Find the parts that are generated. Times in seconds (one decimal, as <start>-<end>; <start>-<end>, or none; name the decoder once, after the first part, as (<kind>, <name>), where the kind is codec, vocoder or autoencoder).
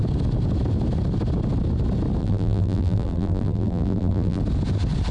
2.2-4.4 (vocoder, BigVGAN v2)